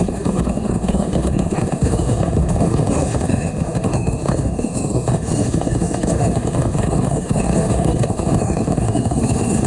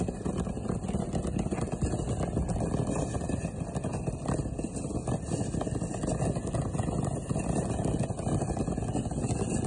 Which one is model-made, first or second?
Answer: first